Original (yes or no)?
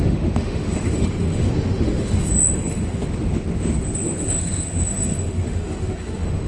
no